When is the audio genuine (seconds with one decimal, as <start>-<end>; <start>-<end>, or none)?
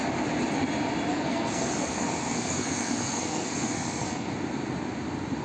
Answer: 0.0-1.1; 4.3-5.4